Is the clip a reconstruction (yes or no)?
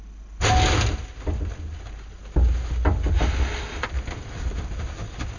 no